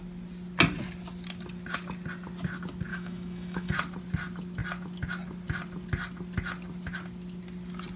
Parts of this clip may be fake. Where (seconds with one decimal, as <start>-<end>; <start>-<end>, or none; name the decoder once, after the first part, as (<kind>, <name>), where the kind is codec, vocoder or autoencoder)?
2.9-3.7 (autoencoder, DAC-VAE)